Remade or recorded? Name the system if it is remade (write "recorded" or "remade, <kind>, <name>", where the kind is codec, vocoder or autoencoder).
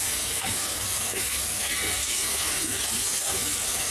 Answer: remade, codec, SNAC